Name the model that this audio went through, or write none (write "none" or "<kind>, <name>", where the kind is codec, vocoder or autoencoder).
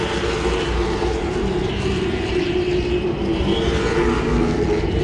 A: vocoder, BigVGAN v2